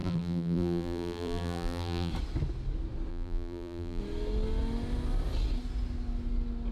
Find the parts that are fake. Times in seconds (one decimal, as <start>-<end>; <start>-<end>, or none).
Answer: 0.0-2.1; 3.1-4.0